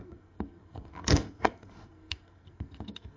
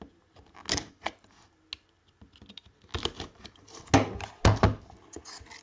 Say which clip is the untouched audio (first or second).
second